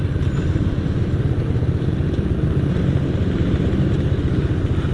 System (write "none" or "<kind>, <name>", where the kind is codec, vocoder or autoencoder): none